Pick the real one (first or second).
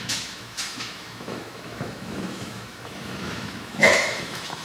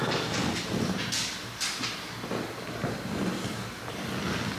second